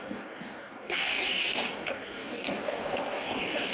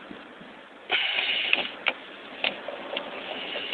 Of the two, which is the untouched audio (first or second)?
second